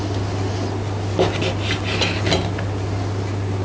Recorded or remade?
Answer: recorded